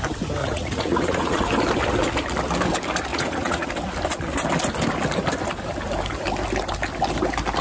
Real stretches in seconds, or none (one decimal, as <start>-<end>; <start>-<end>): 0.0-0.4; 1.5-3.1; 3.7-7.6